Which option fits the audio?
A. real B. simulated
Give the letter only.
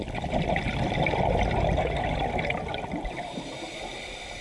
A